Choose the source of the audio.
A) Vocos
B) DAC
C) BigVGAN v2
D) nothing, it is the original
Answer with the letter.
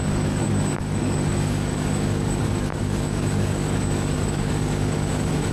B